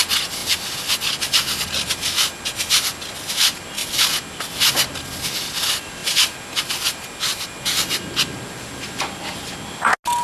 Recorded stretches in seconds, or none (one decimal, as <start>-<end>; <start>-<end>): 0.0-10.2